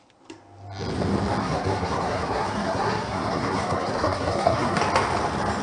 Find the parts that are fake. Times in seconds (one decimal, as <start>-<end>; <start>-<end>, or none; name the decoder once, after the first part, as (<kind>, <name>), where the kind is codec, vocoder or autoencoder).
1.4-4.8 (codec, SNAC)